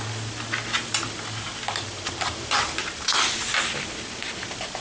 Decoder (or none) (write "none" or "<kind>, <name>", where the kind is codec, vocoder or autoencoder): none